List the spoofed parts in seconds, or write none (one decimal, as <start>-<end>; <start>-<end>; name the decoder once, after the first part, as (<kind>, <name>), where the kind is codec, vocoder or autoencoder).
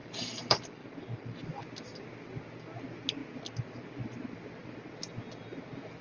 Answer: none